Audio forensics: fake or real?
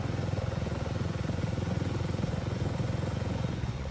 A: fake